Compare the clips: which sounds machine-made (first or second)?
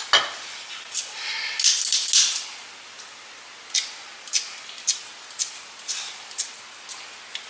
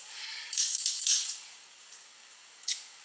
second